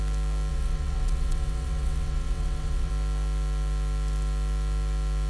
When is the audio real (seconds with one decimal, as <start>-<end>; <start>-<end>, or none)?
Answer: 0.0-0.5; 2.9-5.3